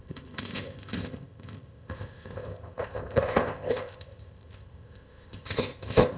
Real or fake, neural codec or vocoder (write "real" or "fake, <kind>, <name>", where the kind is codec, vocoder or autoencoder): fake, codec, ZipCodec